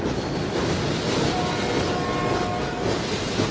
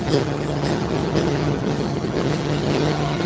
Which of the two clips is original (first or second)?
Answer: first